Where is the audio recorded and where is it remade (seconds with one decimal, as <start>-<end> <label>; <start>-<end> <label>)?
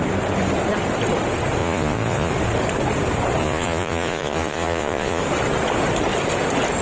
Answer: 0.0-1.6 recorded; 1.6-2.3 remade; 2.3-3.4 recorded; 3.4-5.2 remade; 5.2-6.8 recorded